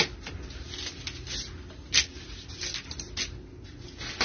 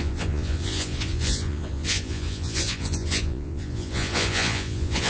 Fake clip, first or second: second